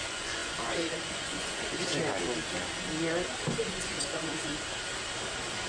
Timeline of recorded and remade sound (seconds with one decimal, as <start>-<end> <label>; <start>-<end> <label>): 0.0-2.0 remade; 2.0-3.8 recorded; 3.8-4.5 remade; 4.5-5.7 recorded